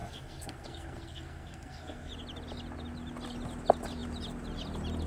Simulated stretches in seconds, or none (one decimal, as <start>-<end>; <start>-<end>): 0.0-2.1